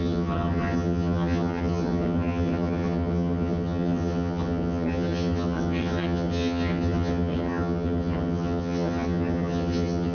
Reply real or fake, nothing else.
fake